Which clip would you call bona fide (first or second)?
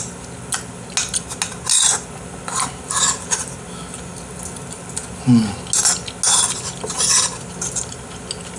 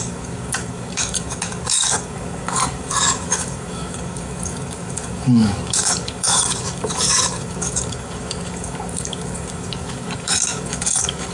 first